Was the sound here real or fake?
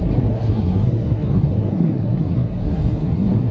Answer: fake